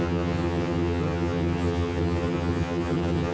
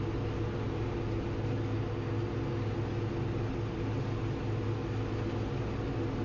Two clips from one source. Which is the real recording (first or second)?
second